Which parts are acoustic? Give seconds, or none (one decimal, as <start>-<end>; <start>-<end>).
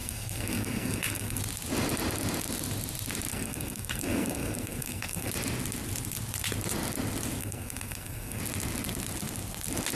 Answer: 1.4-3.3; 5.3-7.4; 8.4-9.9